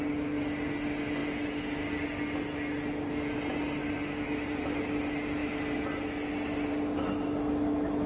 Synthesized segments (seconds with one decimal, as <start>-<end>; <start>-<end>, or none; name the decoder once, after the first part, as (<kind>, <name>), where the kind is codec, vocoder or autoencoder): none